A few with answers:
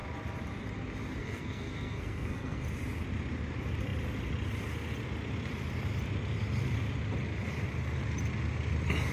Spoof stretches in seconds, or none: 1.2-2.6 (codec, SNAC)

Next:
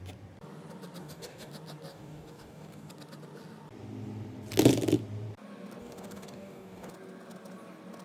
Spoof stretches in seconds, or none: 1.0-1.5 (codec, DAC); 1.9-2.9; 5.8-6.9

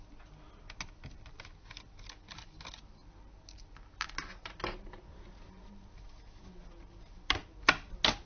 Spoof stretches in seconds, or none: none

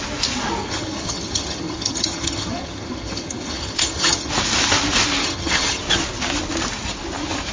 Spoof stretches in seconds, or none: 0.6-4.3 (vocoder, HiFi-GAN); 5.2-5.8

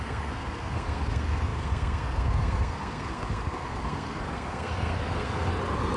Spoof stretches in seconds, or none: 0.0-5.5 (codec, SNAC)

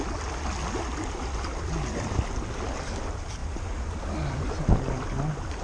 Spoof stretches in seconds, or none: none